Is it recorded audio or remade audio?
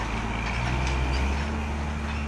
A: recorded